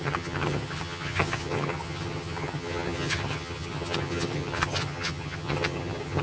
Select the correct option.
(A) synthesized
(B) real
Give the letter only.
A